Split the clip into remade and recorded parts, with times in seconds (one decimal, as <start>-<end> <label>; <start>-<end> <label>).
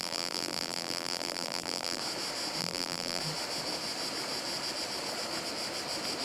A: 0.0-2.0 remade; 2.0-2.6 recorded; 2.6-3.2 remade; 3.2-6.2 recorded